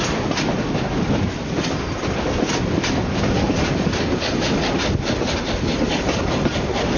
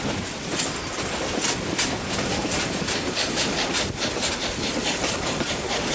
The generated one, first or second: second